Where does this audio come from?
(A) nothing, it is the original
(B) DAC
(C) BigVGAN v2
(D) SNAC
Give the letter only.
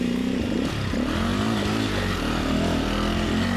A